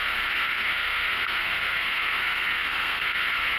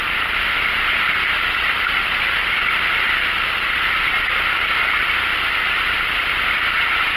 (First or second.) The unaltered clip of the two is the second